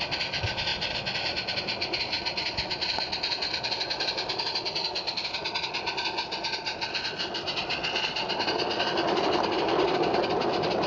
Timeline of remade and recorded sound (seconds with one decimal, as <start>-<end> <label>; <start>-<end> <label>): 0.0-10.9 recorded